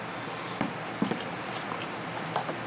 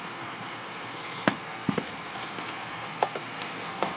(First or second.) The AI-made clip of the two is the second